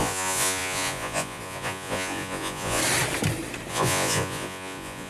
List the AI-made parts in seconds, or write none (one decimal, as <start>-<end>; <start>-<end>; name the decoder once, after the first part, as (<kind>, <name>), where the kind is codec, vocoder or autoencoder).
0.0-2.8 (vocoder, Vocos); 3.7-5.1